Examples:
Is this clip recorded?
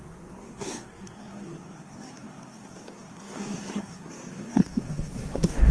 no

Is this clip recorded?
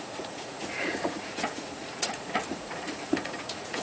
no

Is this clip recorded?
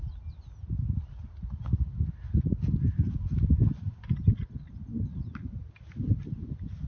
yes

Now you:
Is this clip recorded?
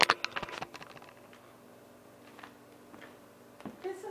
yes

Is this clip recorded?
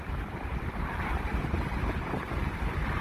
no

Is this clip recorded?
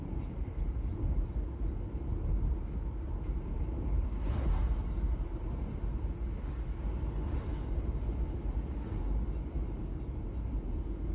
yes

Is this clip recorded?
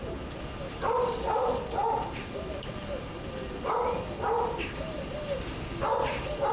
yes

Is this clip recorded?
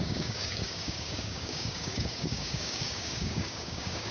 no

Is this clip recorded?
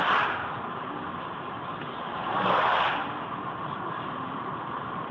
yes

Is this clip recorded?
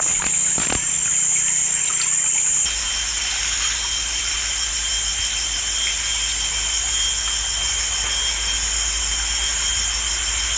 yes